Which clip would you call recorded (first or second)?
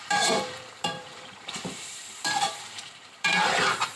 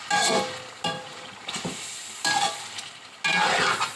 second